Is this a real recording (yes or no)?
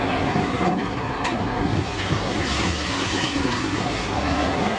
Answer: no